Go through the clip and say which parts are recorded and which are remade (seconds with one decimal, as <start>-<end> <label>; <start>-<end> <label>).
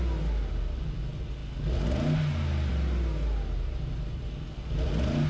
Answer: 0.0-5.3 recorded